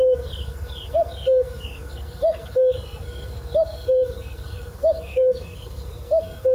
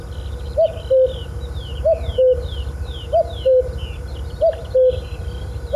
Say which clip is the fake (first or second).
first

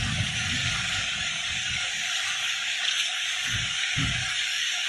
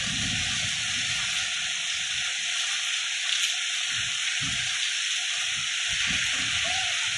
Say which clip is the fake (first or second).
first